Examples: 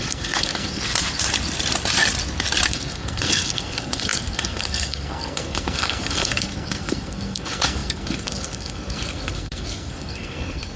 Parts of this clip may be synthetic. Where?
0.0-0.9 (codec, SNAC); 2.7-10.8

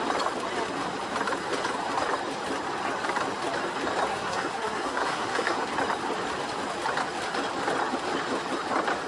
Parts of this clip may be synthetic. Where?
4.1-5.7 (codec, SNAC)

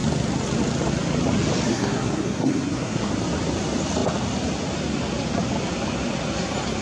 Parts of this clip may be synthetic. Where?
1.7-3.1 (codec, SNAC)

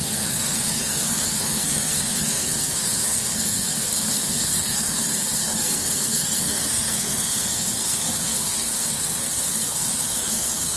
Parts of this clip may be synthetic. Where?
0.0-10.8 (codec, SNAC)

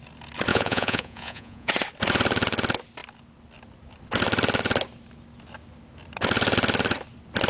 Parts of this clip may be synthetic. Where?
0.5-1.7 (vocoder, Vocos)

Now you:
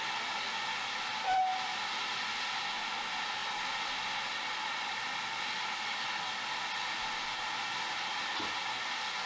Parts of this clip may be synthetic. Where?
none

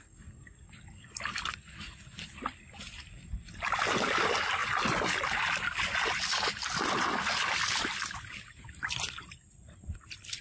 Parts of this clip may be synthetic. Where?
none

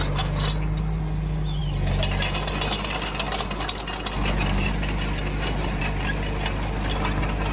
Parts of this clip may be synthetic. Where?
none